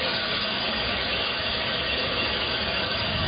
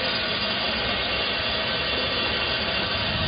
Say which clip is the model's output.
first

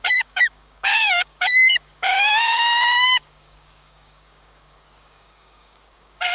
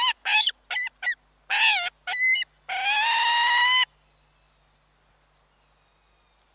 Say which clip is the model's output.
first